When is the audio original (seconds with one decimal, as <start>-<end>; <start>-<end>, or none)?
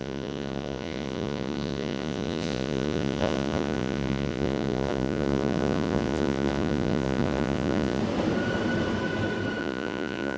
8.0-9.6